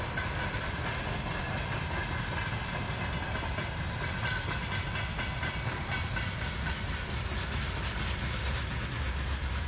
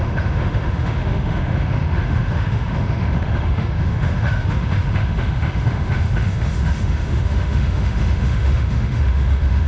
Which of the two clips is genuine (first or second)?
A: first